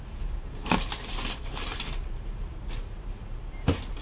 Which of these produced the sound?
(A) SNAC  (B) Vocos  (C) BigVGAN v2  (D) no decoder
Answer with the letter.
C